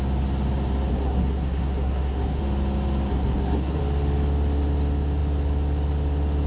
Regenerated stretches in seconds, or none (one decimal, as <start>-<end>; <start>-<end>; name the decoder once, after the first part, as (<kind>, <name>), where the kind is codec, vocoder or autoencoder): 0.9-2.4 (codec, SNAC); 3.1-3.8